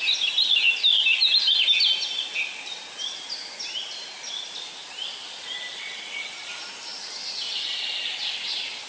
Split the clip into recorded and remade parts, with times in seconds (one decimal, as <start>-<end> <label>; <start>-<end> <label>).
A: 0.0-8.9 recorded